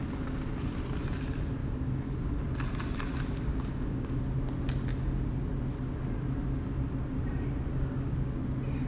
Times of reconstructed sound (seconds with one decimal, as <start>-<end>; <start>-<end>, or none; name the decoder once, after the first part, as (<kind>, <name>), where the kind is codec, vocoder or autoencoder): 1.6-2.4 (codec, DAC); 3.5-4.2; 7.7-8.4